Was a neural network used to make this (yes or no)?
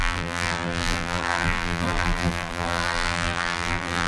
yes